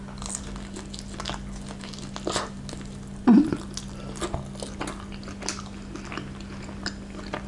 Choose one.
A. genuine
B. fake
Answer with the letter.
A